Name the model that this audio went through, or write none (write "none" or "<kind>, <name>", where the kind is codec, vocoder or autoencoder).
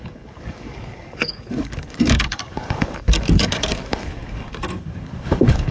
codec, DAC